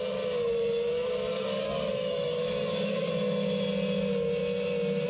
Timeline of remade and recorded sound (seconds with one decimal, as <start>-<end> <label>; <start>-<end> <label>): 0.0-1.3 recorded; 1.3-3.1 remade; 3.1-5.1 recorded